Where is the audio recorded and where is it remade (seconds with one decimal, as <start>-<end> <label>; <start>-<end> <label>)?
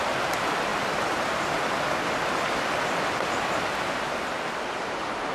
0.0-0.7 remade; 0.7-3.9 recorded; 3.9-5.3 remade